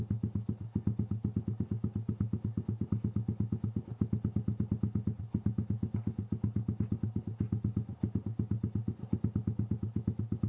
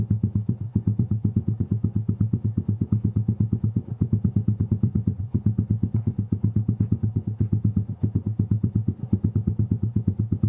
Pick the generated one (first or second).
second